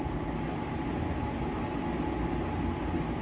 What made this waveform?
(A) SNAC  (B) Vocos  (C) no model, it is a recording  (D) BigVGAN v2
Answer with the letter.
C